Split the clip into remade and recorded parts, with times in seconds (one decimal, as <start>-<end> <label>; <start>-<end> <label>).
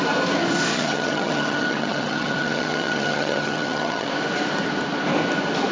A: 0.0-0.7 recorded; 0.7-4.1 remade; 4.1-5.7 recorded